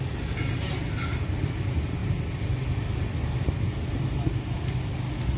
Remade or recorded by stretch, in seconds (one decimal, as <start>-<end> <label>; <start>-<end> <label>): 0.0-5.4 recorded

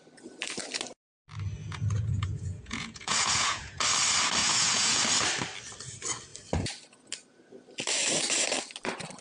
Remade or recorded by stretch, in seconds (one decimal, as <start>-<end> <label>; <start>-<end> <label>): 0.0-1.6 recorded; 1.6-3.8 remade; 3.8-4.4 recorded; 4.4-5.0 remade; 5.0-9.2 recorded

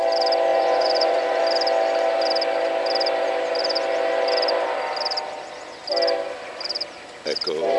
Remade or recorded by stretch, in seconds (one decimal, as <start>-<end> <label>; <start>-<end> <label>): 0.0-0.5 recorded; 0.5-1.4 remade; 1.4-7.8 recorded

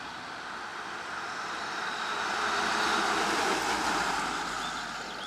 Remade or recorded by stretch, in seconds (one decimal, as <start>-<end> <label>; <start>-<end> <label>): 0.0-0.7 recorded; 0.7-3.9 remade; 3.9-5.3 recorded

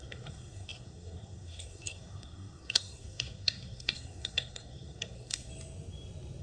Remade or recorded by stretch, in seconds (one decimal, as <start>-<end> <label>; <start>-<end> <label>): 0.0-5.5 remade; 5.5-6.4 recorded

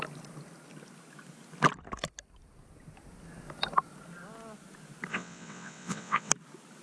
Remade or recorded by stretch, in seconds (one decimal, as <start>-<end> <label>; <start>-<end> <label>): 0.0-5.1 recorded; 5.1-6.3 remade; 6.3-6.8 recorded

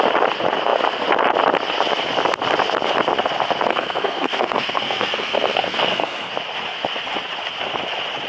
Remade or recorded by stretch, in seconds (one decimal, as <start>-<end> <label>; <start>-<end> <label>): 0.0-3.7 recorded; 3.7-6.3 remade; 6.3-8.3 recorded